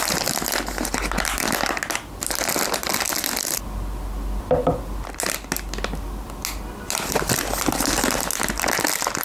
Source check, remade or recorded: recorded